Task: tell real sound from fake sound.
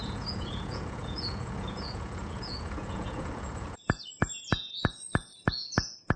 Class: fake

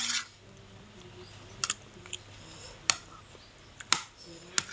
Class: real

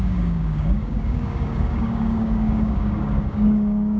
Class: fake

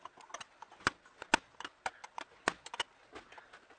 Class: real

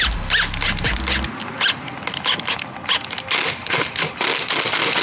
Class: real